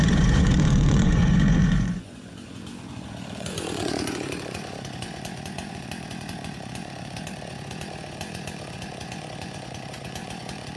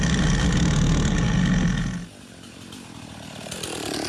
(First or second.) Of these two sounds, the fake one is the first